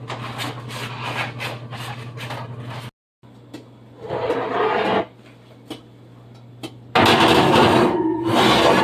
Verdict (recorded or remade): recorded